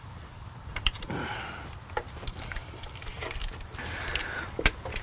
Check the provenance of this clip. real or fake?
fake